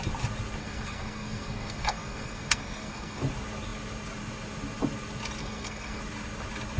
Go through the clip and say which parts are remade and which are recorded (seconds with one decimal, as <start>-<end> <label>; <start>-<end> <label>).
0.0-0.6 recorded; 0.6-3.2 remade; 3.2-5.4 recorded; 5.4-6.0 remade; 6.0-6.8 recorded